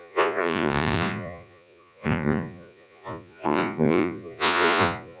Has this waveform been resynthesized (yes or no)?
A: yes